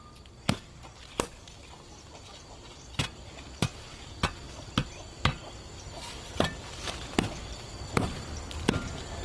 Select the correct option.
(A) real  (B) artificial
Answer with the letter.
A